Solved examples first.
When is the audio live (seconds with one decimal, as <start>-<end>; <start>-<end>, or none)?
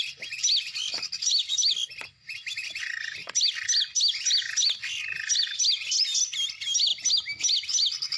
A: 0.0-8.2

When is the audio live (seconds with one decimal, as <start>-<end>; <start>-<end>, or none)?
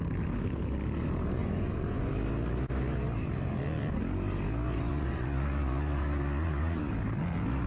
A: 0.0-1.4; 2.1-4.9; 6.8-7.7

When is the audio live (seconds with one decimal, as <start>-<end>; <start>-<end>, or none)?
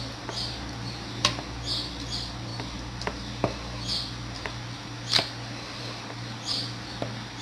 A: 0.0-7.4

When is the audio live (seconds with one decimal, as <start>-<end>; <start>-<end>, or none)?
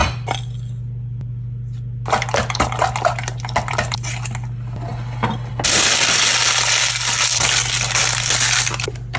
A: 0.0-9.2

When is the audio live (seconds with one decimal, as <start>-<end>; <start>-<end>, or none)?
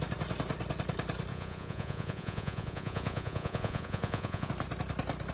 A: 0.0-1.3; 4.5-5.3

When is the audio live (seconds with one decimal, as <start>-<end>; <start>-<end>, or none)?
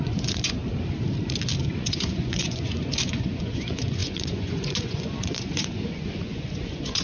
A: 0.6-1.6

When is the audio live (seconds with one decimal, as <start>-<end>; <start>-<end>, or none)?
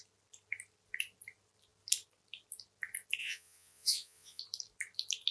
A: 0.0-3.2; 4.4-5.3